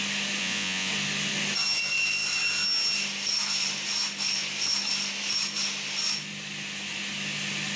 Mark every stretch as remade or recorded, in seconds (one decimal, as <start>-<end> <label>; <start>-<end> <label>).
0.0-0.4 recorded; 0.4-0.9 remade; 0.9-7.8 recorded